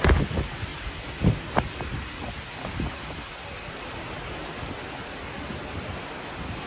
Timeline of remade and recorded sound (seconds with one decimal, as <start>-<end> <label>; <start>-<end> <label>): 0.0-6.7 recorded